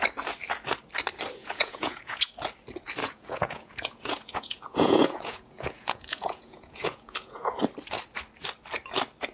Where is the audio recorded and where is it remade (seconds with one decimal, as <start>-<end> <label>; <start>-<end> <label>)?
0.0-1.4 recorded; 1.4-2.3 remade; 2.3-3.0 recorded; 3.0-7.6 remade; 7.6-9.3 recorded